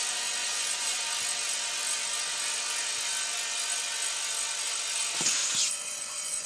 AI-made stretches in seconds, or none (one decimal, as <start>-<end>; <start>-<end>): 0.4-1.0; 5.4-6.5